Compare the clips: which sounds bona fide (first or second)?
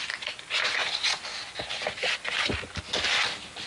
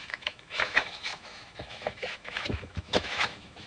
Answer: first